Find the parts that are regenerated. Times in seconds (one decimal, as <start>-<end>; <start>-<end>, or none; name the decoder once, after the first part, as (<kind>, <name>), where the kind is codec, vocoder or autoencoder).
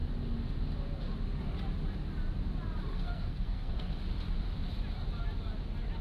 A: 2.9-4.0 (codec, SNAC)